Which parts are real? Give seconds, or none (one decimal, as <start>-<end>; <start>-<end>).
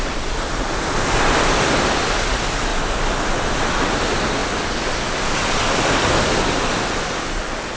2.7-3.5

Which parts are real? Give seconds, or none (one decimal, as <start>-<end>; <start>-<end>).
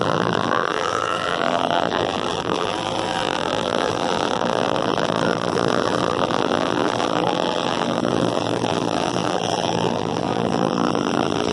none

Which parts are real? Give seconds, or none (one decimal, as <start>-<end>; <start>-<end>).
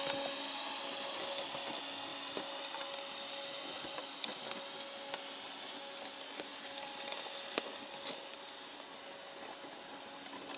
0.0-10.6